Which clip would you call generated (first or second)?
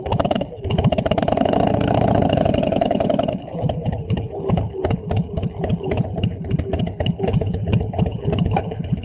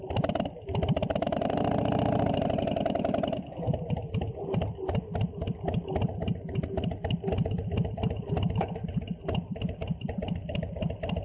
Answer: first